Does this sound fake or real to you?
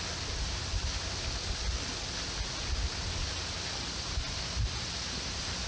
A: real